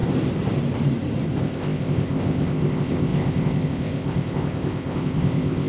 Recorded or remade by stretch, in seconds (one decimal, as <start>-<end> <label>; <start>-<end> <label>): 0.0-1.4 recorded; 1.4-5.7 remade